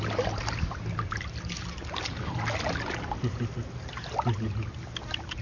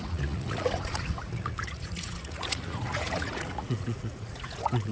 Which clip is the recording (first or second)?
first